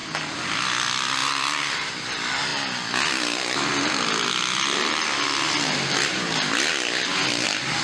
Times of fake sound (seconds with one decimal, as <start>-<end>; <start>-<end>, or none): 1.2-1.9